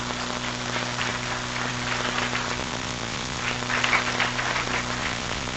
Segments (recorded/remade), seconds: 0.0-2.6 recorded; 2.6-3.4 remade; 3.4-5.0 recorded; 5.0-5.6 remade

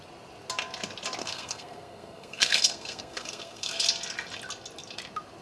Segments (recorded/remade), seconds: 0.0-1.2 recorded; 1.2-3.8 remade; 3.8-5.4 recorded

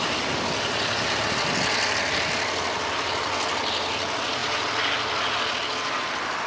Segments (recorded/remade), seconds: 0.0-6.5 recorded

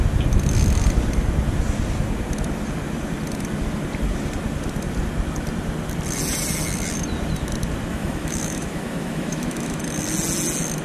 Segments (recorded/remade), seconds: 0.0-7.9 recorded; 7.9-9.8 remade; 9.8-10.8 recorded

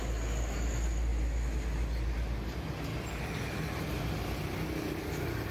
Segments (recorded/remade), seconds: 0.0-5.5 recorded

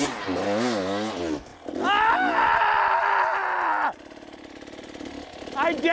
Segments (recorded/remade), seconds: 0.0-5.9 recorded